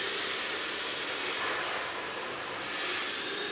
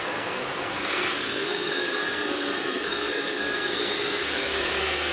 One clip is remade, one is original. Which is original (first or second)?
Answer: first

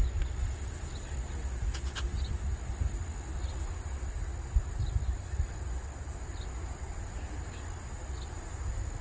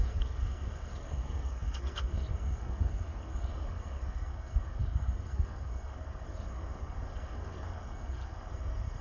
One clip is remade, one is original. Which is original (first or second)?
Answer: first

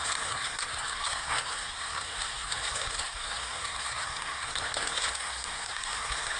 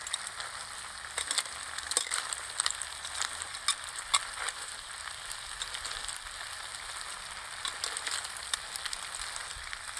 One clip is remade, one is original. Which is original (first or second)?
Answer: second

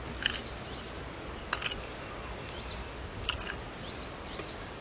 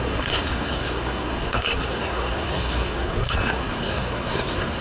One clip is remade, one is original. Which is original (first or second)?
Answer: first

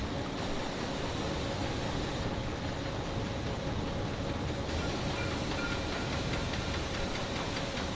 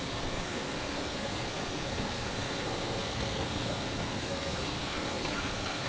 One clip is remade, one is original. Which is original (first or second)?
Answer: first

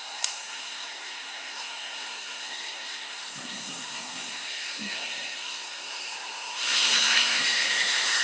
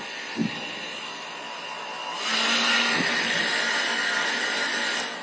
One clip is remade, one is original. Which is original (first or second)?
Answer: second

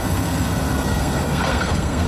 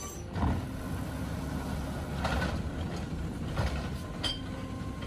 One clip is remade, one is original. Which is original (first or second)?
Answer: second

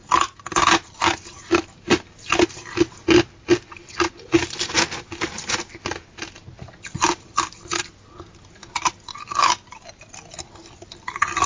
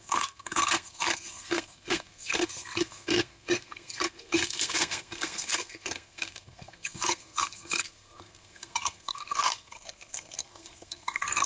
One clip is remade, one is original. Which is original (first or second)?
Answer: first